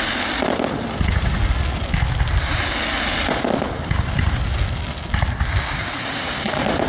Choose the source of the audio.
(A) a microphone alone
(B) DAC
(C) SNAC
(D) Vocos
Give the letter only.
A